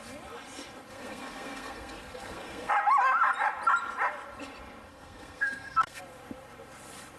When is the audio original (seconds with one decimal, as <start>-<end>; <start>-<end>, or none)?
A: 0.0-0.9; 2.7-4.9; 6.0-7.2